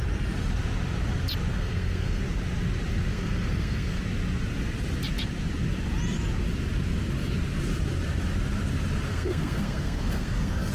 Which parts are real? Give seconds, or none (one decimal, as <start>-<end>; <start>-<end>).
0.0-1.5; 2.2-3.1; 4.0-9.1